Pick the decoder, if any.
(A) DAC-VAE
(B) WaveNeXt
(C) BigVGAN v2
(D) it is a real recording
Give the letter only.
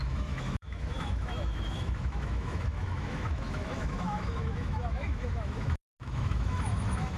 A